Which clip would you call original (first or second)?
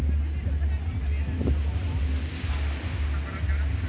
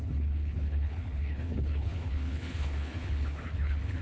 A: first